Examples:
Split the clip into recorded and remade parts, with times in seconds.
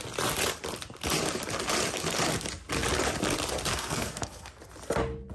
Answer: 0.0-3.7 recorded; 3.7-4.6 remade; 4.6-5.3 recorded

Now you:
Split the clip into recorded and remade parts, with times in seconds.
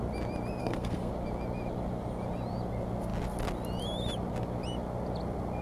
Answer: 0.0-0.6 recorded; 0.6-1.1 remade; 1.1-5.6 recorded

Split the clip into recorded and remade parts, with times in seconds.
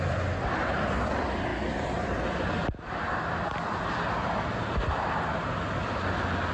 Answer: 0.0-6.5 recorded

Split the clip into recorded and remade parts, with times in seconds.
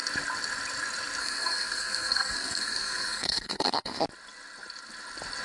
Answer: 0.0-1.2 recorded; 1.2-4.0 remade; 4.0-5.4 recorded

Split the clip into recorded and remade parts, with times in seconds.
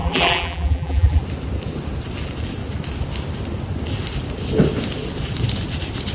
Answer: 0.0-1.2 remade; 1.2-6.1 recorded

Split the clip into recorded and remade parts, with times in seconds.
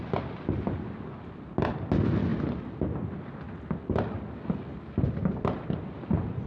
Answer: 0.0-6.5 recorded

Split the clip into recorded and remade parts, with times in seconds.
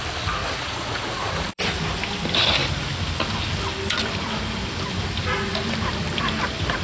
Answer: 0.0-0.4 recorded; 0.4-1.8 remade; 1.8-6.8 recorded